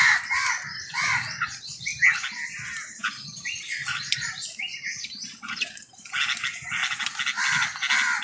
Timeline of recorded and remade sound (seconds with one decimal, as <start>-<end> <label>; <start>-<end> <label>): 0.0-3.8 recorded; 3.8-5.7 remade; 5.7-8.2 recorded

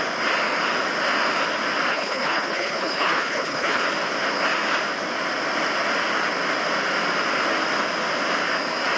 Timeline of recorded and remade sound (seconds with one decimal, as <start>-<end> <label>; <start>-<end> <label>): 0.0-1.9 recorded; 1.9-3.8 remade; 3.8-9.0 recorded

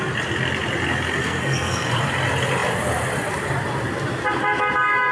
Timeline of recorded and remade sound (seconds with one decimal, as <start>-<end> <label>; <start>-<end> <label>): 0.0-1.2 recorded; 1.2-1.9 remade; 1.9-5.1 recorded

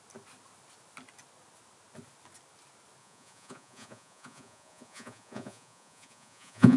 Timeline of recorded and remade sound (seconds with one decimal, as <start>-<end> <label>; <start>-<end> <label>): 0.0-3.0 recorded; 3.0-6.8 remade

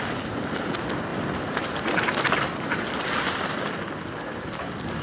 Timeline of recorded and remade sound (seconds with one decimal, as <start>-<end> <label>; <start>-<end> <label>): 0.0-5.0 recorded

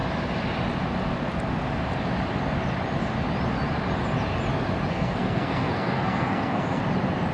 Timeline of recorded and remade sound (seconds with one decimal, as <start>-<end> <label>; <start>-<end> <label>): 0.0-4.9 recorded; 4.9-6.8 remade; 6.8-7.3 recorded